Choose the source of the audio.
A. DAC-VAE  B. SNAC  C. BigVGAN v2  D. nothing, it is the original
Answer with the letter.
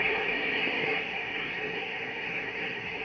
B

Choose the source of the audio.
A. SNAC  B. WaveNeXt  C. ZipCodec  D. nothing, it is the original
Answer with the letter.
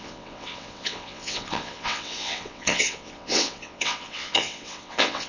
B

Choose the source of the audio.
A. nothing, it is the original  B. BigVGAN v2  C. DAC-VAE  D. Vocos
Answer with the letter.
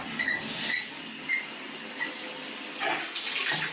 A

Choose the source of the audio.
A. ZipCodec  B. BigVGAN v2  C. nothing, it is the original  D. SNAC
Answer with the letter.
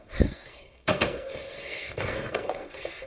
D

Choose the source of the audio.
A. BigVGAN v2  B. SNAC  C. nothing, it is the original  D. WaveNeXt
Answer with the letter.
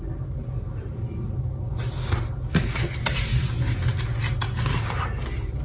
C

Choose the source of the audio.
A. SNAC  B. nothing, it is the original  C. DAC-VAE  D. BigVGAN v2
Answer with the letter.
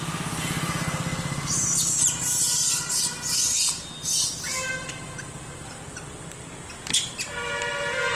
B